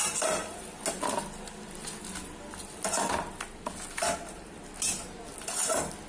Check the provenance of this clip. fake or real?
real